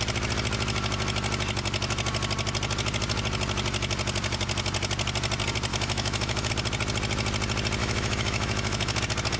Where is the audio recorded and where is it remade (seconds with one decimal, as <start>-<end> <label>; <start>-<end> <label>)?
0.0-5.7 recorded; 5.7-6.5 remade; 6.5-7.8 recorded; 7.8-9.0 remade; 9.0-9.4 recorded